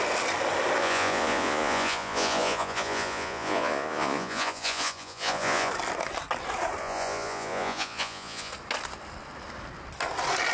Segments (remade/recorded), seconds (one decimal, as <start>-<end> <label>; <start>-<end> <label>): 0.0-0.8 recorded; 0.8-5.7 remade; 5.7-6.8 recorded; 6.8-8.5 remade; 8.5-10.5 recorded